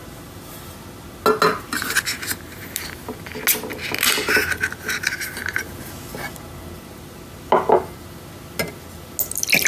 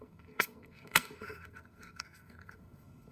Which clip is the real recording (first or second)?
first